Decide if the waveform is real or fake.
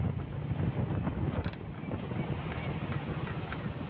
real